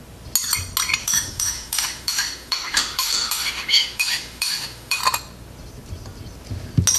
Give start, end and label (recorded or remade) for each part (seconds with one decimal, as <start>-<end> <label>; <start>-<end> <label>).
0.0-1.0 recorded; 1.0-5.0 remade; 5.0-7.0 recorded